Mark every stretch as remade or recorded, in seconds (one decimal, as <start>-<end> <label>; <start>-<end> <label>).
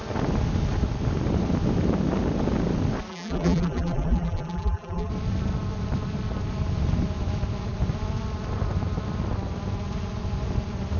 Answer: 0.0-3.1 recorded; 3.1-5.1 remade; 5.1-11.0 recorded